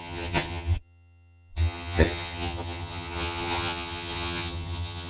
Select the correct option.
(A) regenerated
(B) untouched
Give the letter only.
A